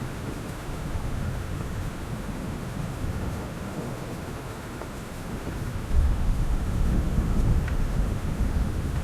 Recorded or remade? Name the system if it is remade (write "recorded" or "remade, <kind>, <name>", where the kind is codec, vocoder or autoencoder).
remade, autoencoder, DAC-VAE